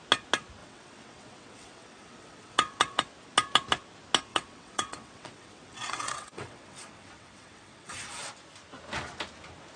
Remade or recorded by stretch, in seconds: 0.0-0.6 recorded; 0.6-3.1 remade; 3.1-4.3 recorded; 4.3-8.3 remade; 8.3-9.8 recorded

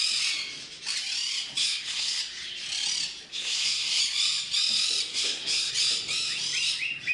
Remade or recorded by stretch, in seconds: 0.0-1.6 recorded; 1.6-2.2 remade; 2.2-3.3 recorded; 3.3-4.0 remade; 4.0-5.1 recorded; 5.1-5.7 remade; 5.7-7.1 recorded

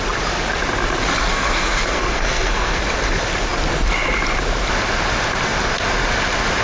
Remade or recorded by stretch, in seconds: 0.0-1.3 recorded; 1.3-2.8 remade; 2.8-6.6 recorded

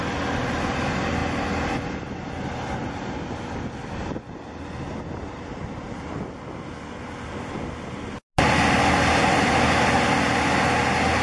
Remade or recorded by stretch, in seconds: 0.0-11.2 recorded

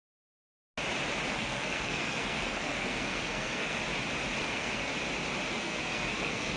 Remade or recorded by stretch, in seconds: 0.0-1.3 recorded; 1.3-3.8 remade; 3.8-4.4 recorded; 4.4-4.9 remade; 4.9-5.5 recorded; 5.5-6.6 remade

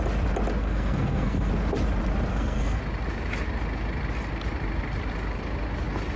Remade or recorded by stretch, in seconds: 0.0-0.6 recorded; 0.6-1.5 remade; 1.5-2.3 recorded; 2.3-2.8 remade; 2.8-6.2 recorded

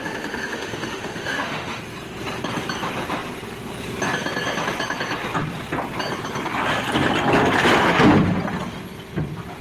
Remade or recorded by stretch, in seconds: 0.0-1.8 remade; 1.8-9.6 recorded